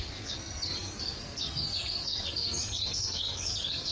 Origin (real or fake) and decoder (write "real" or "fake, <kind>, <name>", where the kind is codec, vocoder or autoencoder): fake, codec, SNAC